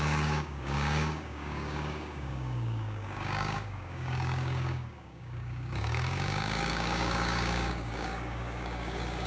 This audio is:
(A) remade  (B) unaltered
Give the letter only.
A